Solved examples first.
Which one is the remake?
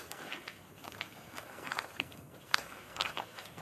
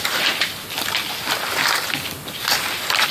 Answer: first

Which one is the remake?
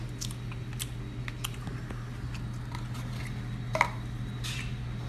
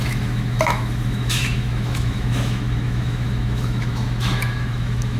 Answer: second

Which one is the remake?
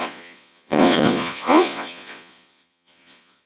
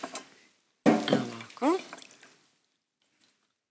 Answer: first